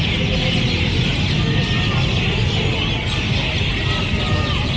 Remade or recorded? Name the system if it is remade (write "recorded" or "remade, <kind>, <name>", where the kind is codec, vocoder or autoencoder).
recorded